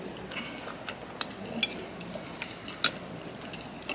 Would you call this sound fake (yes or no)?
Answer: no